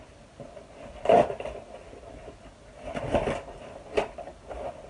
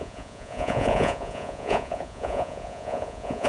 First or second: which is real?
first